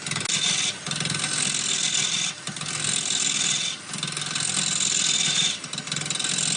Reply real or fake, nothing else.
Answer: real